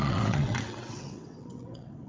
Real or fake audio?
fake